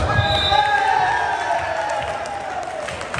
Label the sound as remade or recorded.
recorded